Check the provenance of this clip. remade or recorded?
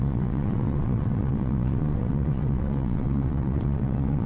remade